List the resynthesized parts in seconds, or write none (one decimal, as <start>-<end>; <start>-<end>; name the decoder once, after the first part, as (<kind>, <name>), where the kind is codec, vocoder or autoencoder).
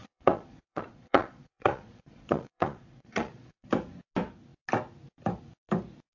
0.0-3.7 (vocoder, Vocos)